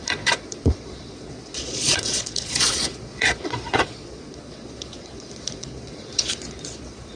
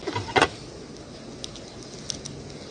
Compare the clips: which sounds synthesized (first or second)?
first